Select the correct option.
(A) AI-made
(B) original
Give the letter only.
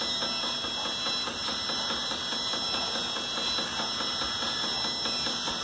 B